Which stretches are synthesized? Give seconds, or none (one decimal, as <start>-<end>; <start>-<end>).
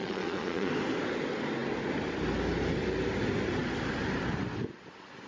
0.0-0.7